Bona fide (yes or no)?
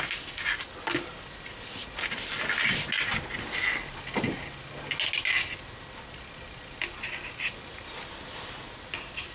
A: yes